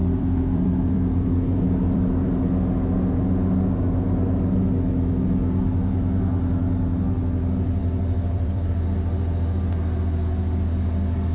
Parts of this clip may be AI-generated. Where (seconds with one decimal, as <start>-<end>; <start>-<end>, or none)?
0.0-2.4; 7.8-8.7